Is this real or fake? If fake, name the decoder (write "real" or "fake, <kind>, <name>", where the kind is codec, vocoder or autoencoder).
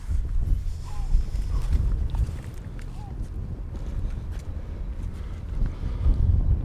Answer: real